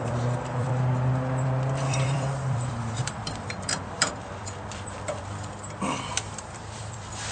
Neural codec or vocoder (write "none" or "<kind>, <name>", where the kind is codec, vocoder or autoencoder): vocoder, BigVGAN v2